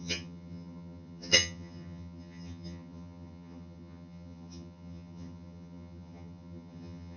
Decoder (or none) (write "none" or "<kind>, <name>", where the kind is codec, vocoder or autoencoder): vocoder, HiFi-GAN